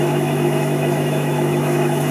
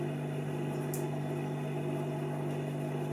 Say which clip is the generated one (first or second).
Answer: first